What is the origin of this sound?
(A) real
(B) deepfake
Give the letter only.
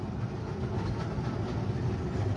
A